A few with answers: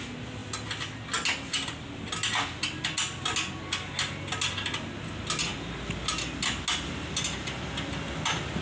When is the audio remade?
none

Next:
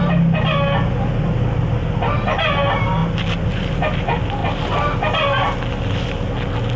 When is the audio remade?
none

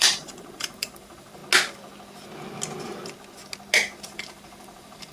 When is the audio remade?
0.0-1.4 (vocoder, BigVGAN v2); 4.0-5.1

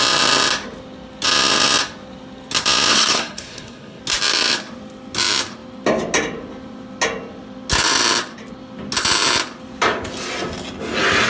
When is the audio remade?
2.9-4.0 (codec, SNAC)

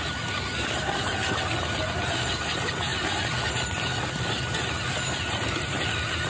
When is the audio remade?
none